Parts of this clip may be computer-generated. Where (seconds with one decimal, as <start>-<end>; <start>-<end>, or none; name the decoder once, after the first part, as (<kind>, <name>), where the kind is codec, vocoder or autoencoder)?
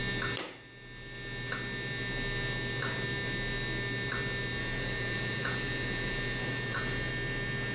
4.6-7.1 (vocoder, Vocos)